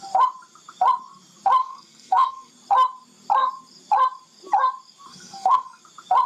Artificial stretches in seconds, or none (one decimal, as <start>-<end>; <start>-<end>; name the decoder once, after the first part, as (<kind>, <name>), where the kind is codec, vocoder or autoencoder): 1.6-2.5 (codec, SNAC); 5.1-5.8